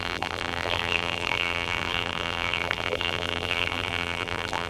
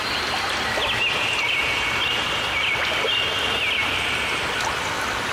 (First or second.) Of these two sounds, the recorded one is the second